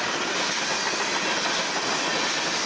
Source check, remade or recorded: recorded